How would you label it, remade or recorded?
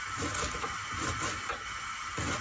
recorded